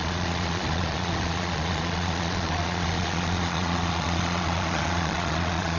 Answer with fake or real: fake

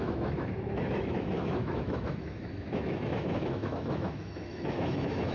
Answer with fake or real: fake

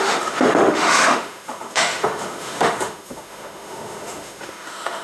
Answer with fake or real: fake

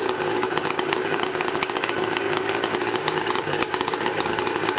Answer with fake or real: fake